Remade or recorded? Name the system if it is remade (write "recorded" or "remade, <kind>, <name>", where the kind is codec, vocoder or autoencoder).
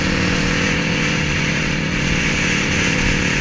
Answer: remade, vocoder, Vocos